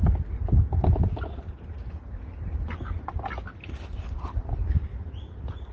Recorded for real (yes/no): yes